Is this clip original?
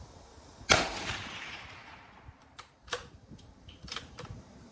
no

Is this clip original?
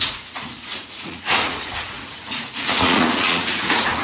no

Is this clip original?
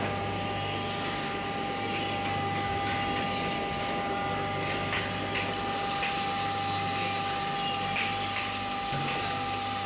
yes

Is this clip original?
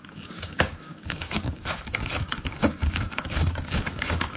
no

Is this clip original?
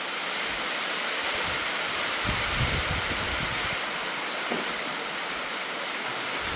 no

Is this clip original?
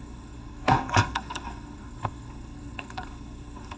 no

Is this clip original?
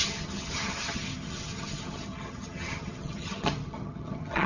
no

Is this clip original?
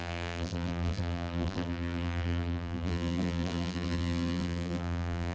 no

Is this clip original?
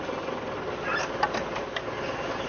yes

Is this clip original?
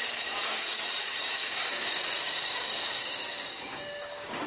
no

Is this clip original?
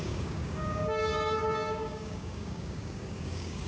no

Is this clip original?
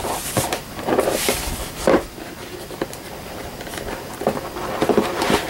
yes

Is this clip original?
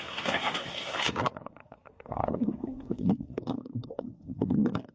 no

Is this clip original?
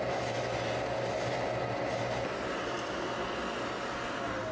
yes